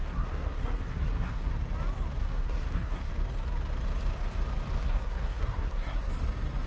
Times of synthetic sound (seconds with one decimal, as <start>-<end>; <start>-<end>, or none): 0.0-1.5; 2.2-3.1; 4.8-6.1